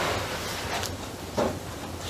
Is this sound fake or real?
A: real